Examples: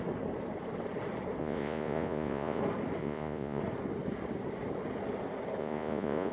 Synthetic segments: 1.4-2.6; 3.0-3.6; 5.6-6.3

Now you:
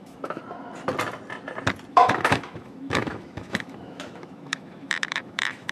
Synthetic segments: 0.0-0.4; 1.9-5.7

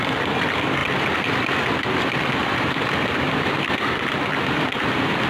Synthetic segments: 2.4-3.0

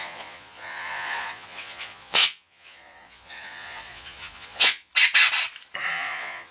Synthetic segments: 0.0-4.9; 5.9-6.5

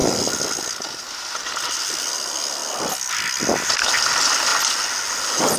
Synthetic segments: none